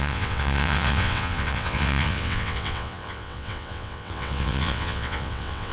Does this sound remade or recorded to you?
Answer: remade